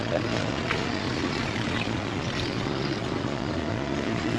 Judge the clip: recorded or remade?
remade